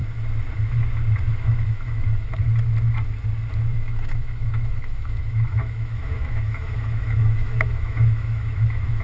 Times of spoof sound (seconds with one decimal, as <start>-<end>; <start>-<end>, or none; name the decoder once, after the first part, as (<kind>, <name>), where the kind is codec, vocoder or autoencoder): 1.3-2.4 (autoencoder, DAC-VAE); 3.7-9.0